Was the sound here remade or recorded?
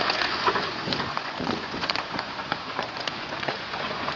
remade